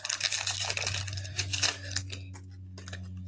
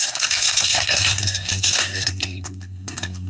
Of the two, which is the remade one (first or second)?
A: second